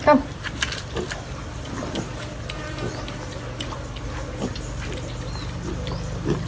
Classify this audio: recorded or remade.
recorded